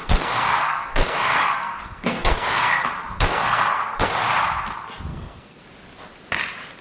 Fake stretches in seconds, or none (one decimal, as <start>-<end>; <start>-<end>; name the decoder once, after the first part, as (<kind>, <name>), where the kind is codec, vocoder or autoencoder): 0.0-4.1 (codec, SNAC); 5.1-5.6

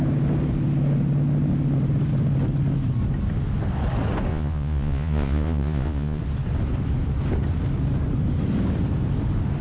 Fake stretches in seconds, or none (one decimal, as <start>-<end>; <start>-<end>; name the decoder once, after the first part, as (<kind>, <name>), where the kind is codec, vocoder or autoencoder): 4.3-6.2 (vocoder, Vocos)